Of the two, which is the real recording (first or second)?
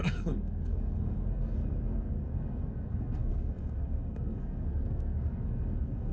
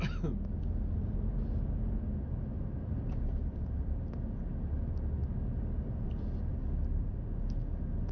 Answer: second